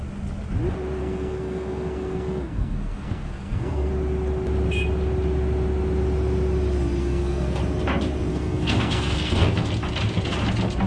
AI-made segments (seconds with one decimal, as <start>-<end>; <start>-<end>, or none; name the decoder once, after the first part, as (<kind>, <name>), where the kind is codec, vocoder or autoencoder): 1.0-3.9 (codec, SNAC); 7.0-7.6; 8.3-9.7